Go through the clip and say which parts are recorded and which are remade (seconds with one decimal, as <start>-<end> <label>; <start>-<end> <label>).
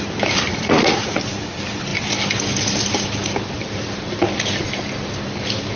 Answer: 0.0-0.5 recorded; 0.5-1.2 remade; 1.2-5.8 recorded